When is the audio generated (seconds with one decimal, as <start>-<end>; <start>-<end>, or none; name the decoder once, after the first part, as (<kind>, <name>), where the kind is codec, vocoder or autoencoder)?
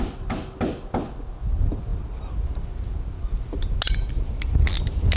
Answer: none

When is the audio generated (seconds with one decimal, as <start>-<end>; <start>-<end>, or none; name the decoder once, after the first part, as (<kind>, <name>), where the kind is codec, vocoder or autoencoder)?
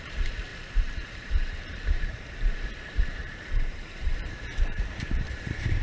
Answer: 0.0-5.8 (vocoder, BigVGAN v2)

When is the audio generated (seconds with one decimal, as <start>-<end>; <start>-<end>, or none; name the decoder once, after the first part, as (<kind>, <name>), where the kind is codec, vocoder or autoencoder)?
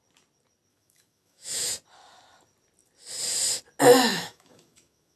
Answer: 0.7-1.7 (autoencoder, DAC-VAE); 4.1-5.2